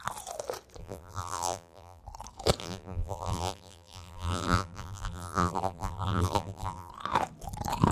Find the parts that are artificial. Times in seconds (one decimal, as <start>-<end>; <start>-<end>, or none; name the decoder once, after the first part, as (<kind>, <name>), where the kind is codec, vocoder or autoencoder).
0.8-2.0 (vocoder, BigVGAN v2); 2.6-6.9